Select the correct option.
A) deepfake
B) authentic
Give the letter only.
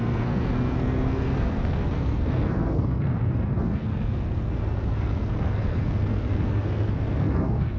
A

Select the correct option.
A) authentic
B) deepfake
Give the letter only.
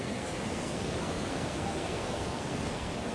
B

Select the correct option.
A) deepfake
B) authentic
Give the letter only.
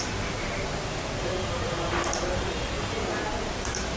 B